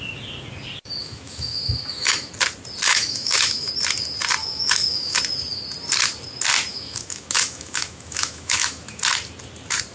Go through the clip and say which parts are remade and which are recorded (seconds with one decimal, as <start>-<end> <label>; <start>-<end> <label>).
0.0-1.0 recorded; 1.0-2.3 remade; 2.3-2.9 recorded; 2.9-3.7 remade; 3.7-4.4 recorded; 4.4-5.2 remade; 5.2-6.7 recorded; 6.7-9.0 remade; 9.0-9.9 recorded